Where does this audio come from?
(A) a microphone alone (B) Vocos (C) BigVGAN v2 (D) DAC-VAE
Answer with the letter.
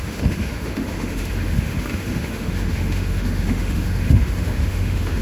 D